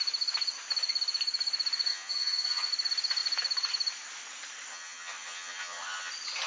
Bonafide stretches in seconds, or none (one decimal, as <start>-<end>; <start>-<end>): 0.0-1.9; 2.7-4.7; 6.1-6.5